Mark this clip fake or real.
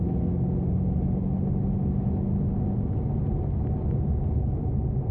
real